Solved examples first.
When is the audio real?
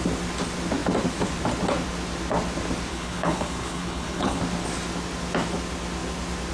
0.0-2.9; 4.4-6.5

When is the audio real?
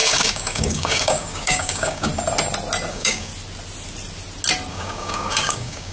2.1-2.9; 3.3-4.7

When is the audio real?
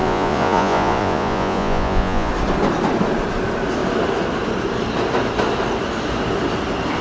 2.3-7.0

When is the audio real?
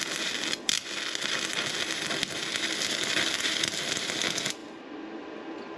0.0-5.8